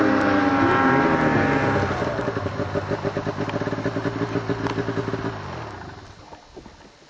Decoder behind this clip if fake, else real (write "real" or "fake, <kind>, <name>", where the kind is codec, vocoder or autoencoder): real